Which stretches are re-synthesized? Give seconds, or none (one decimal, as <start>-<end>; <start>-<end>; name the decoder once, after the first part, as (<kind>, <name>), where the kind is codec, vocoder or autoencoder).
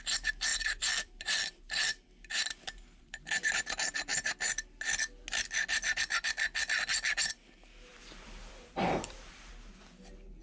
0.5-3.5 (vocoder, BigVGAN v2); 7.9-9.5